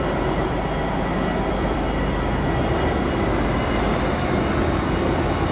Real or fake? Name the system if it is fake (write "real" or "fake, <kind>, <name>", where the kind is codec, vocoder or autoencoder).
real